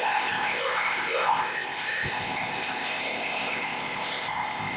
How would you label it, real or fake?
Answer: fake